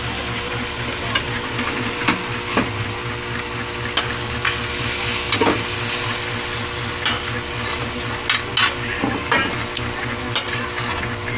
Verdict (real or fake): real